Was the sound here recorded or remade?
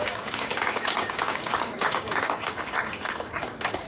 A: remade